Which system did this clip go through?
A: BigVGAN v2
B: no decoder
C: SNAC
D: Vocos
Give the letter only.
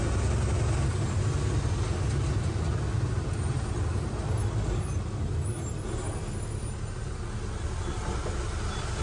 B